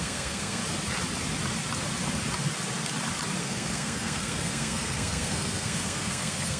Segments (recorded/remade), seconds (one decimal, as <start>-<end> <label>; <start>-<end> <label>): 0.0-0.6 remade; 0.6-3.4 recorded; 3.4-6.6 remade